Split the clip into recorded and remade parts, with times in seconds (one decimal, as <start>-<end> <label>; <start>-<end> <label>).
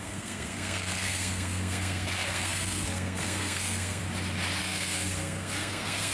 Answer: 0.0-4.0 remade; 4.0-4.6 recorded; 4.6-6.1 remade